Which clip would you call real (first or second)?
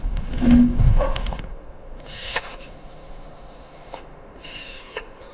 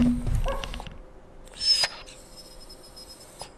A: second